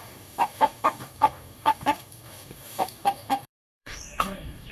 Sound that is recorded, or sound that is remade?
remade